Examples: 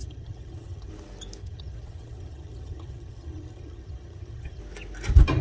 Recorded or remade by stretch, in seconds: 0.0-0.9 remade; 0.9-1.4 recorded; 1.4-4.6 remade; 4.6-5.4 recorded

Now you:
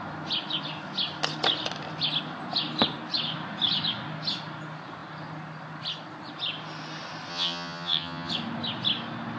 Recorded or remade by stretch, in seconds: 0.0-7.3 recorded; 7.3-8.3 remade; 8.3-9.4 recorded

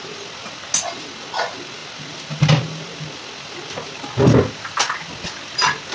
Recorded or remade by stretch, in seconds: 0.0-5.9 recorded